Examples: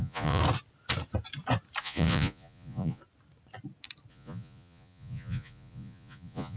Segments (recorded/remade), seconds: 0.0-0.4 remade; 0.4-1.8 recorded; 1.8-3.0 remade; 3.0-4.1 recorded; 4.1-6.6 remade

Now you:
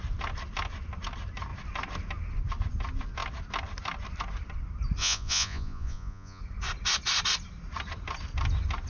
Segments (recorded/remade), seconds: 0.0-5.0 recorded; 5.0-6.4 remade; 6.4-8.9 recorded

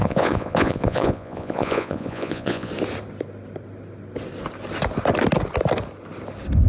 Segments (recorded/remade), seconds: 0.0-2.7 remade; 2.7-6.7 recorded